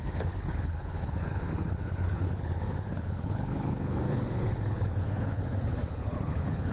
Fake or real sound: fake